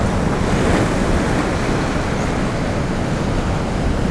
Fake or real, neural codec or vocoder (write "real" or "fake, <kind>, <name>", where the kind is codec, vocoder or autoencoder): real